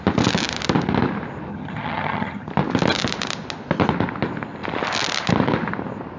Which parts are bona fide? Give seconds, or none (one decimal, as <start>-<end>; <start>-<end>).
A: 0.0-1.5; 2.5-6.2